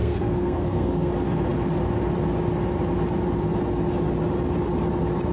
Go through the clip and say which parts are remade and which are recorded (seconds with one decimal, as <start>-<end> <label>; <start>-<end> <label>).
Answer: 0.0-1.1 remade; 1.1-5.3 recorded

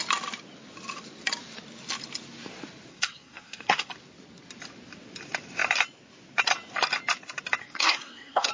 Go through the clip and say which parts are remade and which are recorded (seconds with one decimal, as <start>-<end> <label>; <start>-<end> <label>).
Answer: 0.0-2.9 recorded; 2.9-3.9 remade; 3.9-7.6 recorded; 7.6-8.5 remade

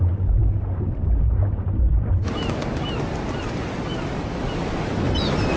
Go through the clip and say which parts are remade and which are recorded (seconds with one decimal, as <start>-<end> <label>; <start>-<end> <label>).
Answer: 0.0-5.6 recorded

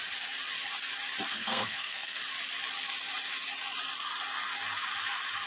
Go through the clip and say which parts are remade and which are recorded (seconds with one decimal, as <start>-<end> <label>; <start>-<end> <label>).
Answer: 0.0-1.3 recorded; 1.3-2.2 remade; 2.2-5.5 recorded

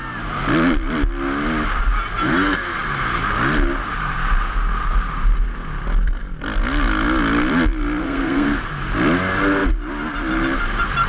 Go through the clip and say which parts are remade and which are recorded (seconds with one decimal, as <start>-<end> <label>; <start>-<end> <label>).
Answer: 0.0-8.0 recorded; 8.0-8.7 remade; 8.7-11.1 recorded

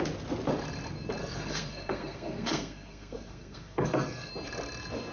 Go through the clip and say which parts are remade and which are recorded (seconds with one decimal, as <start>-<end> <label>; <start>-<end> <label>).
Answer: 0.0-1.2 recorded; 1.2-4.3 remade; 4.3-5.1 recorded

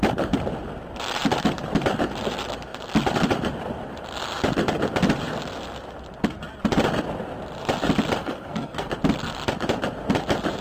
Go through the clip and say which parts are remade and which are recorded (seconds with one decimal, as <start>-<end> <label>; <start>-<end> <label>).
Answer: 0.0-8.2 recorded; 8.2-8.9 remade; 8.9-10.6 recorded

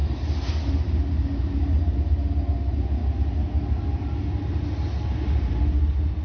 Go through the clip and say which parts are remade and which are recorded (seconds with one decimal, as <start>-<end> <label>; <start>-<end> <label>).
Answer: 0.0-6.2 recorded